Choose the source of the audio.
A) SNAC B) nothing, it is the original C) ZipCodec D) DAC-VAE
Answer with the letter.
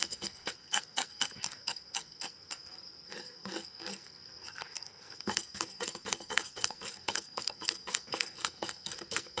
A